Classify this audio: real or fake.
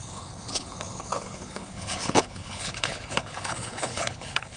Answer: fake